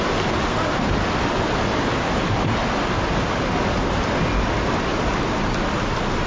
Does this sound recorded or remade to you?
recorded